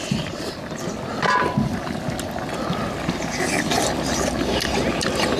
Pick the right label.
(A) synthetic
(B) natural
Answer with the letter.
B